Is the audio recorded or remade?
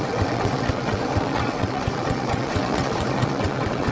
remade